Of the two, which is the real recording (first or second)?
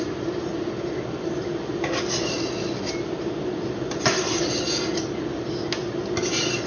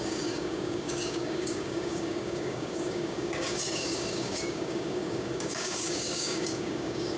first